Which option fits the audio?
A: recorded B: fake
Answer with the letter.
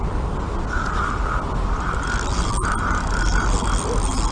A